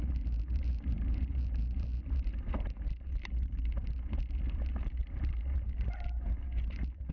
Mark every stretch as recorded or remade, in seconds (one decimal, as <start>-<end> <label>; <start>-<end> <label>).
0.0-0.5 recorded; 0.5-3.9 remade; 3.9-5.0 recorded; 5.0-7.1 remade